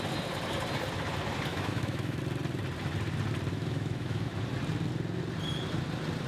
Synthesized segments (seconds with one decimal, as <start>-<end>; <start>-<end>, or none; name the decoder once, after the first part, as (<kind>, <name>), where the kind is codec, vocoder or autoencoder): 1.5-2.2 (autoencoder, DAC-VAE); 3.5-4.3